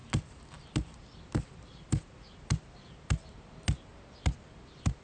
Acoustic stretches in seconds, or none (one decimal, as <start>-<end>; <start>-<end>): 0.0-5.0